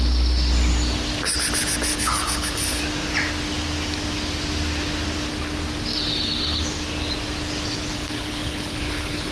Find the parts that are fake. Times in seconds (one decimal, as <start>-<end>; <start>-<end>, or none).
1.9-2.8; 7.9-9.3